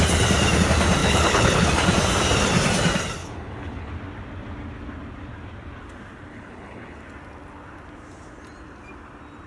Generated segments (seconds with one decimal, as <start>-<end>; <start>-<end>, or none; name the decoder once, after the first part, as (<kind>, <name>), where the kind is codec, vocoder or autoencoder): 1.0-1.7 (codec, HILCodec); 3.2-3.9; 6.3-7.0